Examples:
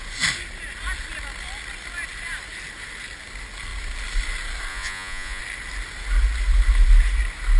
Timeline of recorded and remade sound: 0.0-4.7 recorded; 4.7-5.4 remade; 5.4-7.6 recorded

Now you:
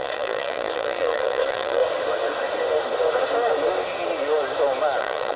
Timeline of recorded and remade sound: 0.0-1.8 remade; 1.8-5.0 recorded; 5.0-5.4 remade

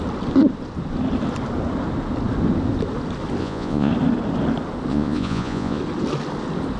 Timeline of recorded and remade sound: 0.0-3.4 recorded; 3.4-3.9 remade; 3.9-4.9 recorded; 4.9-5.8 remade; 5.8-6.8 recorded

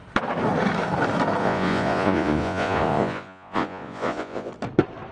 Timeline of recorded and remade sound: 0.0-1.4 recorded; 1.4-4.5 remade; 4.5-5.1 recorded

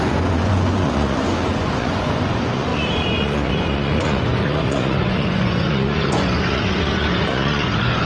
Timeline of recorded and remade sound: 0.0-8.0 remade